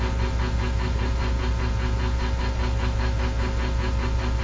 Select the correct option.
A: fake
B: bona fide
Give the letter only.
B